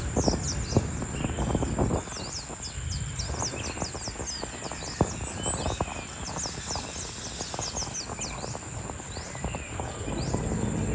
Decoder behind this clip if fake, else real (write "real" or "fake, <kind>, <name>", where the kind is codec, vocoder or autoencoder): real